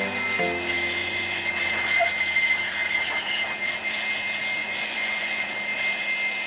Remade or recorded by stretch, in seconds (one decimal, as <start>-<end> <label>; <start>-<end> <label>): 0.0-1.0 recorded; 1.0-1.5 remade; 1.5-4.6 recorded; 4.6-5.5 remade; 5.5-6.5 recorded